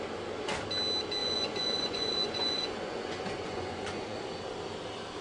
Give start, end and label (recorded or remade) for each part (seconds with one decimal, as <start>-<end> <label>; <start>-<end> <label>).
0.0-1.2 recorded; 1.2-4.3 remade; 4.3-5.2 recorded